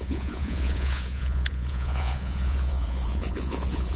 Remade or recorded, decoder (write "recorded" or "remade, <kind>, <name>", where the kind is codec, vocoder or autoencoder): remade, vocoder, Vocos